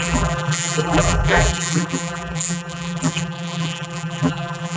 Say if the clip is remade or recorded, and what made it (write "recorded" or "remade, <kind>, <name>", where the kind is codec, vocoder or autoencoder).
remade, vocoder, BigVGAN v2